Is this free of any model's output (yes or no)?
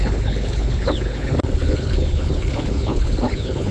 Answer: no